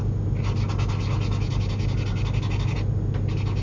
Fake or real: real